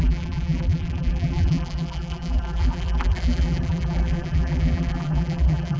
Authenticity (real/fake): fake